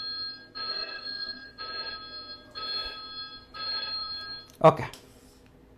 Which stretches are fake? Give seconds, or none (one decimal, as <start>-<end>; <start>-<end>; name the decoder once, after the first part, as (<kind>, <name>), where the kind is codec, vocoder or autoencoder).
0.7-1.6 (codec, SNAC)